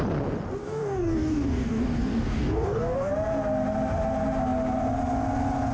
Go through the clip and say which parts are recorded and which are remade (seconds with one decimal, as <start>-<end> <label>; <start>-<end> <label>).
0.0-0.6 recorded; 0.6-3.1 remade; 3.1-5.7 recorded